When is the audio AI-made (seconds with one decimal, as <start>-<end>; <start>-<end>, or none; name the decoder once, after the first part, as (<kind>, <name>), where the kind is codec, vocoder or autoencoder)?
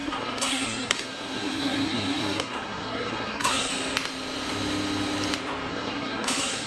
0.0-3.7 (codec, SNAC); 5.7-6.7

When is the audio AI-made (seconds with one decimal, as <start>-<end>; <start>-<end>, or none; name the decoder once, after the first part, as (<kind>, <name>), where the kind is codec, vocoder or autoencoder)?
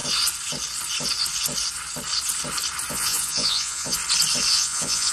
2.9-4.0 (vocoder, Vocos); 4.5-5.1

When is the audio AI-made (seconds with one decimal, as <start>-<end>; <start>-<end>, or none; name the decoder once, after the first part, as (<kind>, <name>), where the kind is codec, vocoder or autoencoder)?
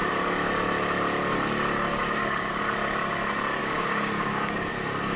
0.0-0.5 (codec, DAC); 2.0-2.6; 3.6-4.7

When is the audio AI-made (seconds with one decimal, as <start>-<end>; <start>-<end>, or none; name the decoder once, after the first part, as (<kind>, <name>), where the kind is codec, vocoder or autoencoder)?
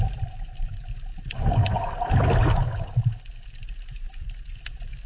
none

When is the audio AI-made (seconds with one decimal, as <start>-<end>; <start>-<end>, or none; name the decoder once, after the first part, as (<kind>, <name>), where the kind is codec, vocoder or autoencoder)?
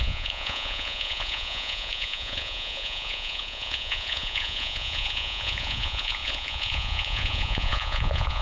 0.0-8.4 (vocoder, Vocos)